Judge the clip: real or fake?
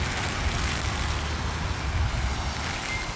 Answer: real